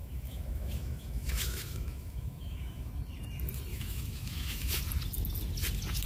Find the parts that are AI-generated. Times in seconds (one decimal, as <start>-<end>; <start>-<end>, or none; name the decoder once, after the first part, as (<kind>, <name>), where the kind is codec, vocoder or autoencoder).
0.0-2.9 (autoencoder, DAC-VAE); 3.7-4.8